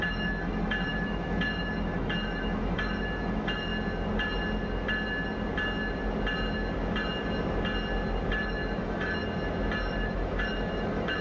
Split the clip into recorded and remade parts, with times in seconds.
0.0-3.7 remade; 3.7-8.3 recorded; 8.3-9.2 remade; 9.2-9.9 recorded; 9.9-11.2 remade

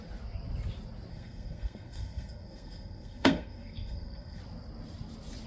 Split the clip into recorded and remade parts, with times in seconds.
0.0-1.1 recorded; 1.1-4.4 remade; 4.4-5.5 recorded

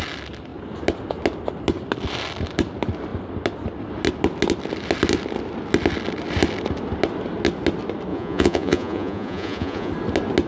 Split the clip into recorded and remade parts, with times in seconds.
0.0-8.1 recorded; 8.1-9.9 remade; 9.9-10.5 recorded

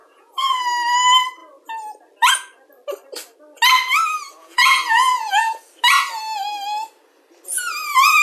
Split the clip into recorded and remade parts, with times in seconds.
0.0-0.6 remade; 0.6-4.4 recorded; 4.4-5.6 remade; 5.6-8.2 recorded

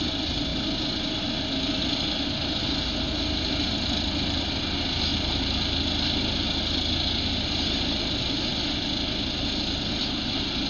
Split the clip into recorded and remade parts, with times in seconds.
0.0-5.1 recorded; 5.1-6.6 remade; 6.6-10.7 recorded